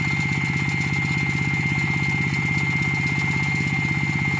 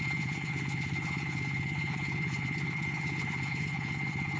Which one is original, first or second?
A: first